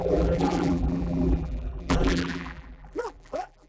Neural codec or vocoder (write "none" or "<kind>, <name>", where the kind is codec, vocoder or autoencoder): vocoder, BigVGAN v2